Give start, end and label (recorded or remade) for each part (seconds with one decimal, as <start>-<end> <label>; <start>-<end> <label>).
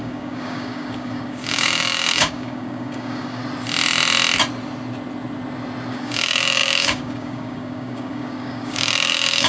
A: 0.0-3.4 remade; 3.4-5.9 recorded; 5.9-9.5 remade